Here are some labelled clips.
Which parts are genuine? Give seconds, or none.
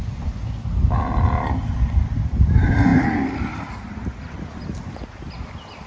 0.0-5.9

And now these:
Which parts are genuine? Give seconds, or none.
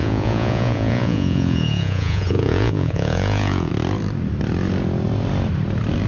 3.7-6.1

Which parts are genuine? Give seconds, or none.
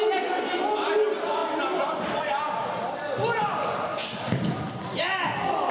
0.0-5.7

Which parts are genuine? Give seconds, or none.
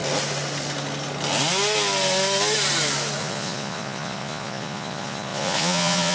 0.0-3.2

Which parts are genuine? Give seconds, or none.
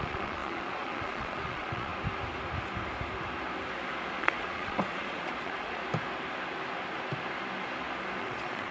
1.9-4.2; 5.8-8.2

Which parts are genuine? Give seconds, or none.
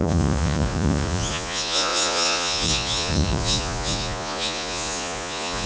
none